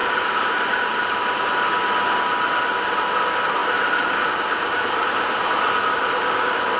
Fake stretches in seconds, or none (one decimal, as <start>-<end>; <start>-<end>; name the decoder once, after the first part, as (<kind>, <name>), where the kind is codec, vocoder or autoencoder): 0.0-1.7 (vocoder, BigVGAN v2); 3.6-5.5